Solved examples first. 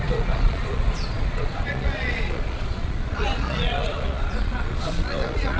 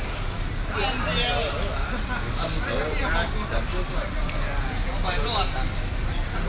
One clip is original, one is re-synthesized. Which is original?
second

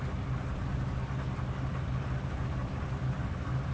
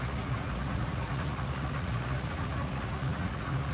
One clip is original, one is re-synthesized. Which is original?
first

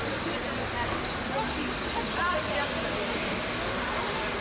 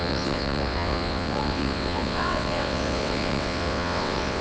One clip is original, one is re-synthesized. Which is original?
first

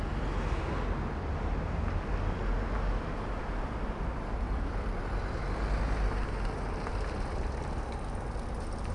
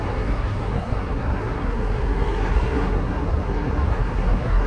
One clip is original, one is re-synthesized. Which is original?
first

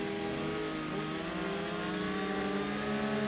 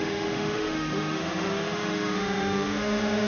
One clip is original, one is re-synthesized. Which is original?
first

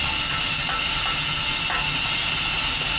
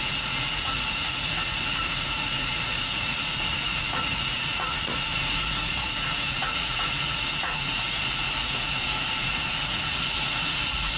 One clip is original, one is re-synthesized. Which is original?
first